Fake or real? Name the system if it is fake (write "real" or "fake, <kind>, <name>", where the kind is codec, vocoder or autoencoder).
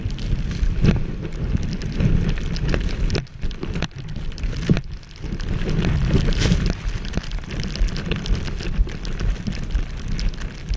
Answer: real